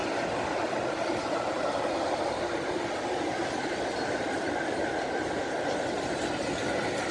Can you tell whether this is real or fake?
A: real